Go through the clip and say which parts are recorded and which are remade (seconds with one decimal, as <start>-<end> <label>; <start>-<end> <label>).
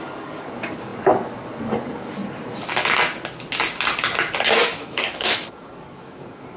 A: 0.0-2.2 remade; 2.2-4.6 recorded; 4.6-6.6 remade